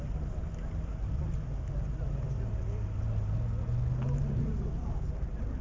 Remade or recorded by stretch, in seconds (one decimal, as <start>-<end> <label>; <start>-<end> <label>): 0.0-5.6 recorded